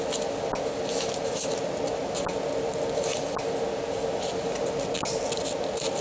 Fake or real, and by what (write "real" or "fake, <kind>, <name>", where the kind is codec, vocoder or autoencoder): real